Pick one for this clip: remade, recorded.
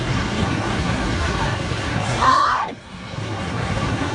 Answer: remade